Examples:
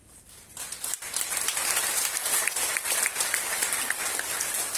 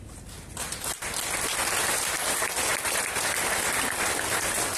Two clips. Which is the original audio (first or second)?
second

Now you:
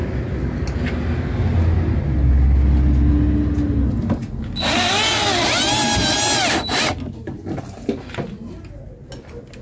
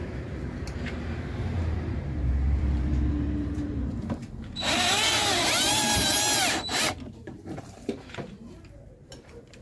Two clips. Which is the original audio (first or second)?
first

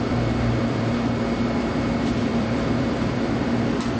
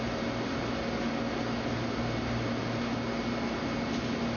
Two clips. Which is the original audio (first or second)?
second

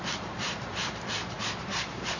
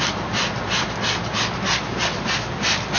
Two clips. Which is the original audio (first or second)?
second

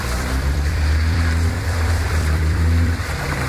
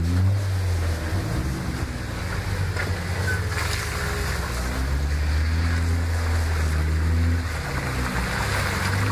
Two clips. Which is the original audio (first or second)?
second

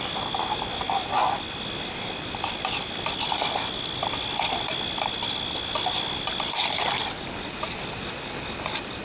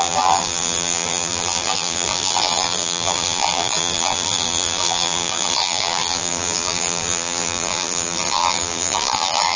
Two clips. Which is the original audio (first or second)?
first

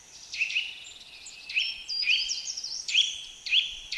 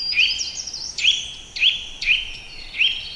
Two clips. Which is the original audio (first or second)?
second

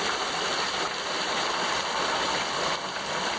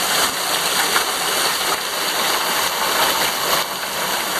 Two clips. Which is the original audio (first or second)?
second